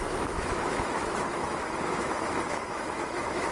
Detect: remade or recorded remade